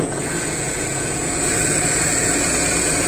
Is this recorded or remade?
remade